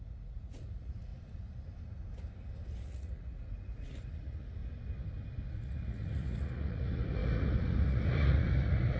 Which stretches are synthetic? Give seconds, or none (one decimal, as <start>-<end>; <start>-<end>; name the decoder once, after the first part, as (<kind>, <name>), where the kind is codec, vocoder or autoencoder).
0.0-1.1 (vocoder, Vocos); 2.8-4.6; 5.5-9.0